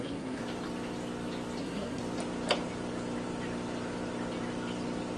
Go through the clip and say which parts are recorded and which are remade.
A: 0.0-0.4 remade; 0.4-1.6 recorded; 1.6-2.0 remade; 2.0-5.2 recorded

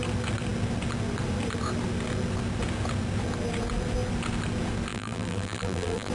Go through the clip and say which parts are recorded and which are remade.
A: 0.0-4.9 recorded; 4.9-6.1 remade